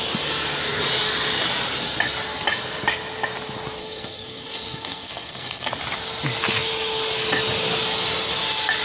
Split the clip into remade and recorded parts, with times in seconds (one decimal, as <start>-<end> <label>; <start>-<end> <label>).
0.0-3.8 recorded; 3.8-5.7 remade; 5.7-8.8 recorded

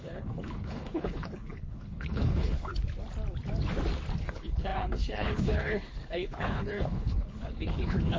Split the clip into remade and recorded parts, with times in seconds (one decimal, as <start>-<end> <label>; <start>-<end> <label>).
0.0-2.7 remade; 2.7-4.2 recorded; 4.2-8.2 remade

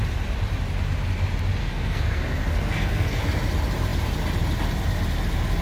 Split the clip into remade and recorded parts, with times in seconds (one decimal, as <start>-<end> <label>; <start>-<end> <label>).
0.0-1.6 recorded; 1.6-3.2 remade; 3.2-5.6 recorded

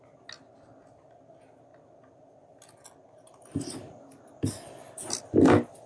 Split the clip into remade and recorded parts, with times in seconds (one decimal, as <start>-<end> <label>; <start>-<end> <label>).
0.0-5.9 recorded